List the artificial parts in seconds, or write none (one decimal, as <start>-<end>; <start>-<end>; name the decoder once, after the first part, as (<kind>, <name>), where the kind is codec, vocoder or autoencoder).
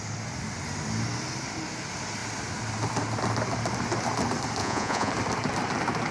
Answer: 4.6-5.1 (vocoder, Vocos)